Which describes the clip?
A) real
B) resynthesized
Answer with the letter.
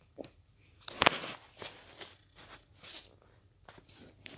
A